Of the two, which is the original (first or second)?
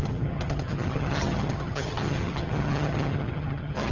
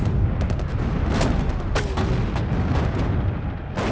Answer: second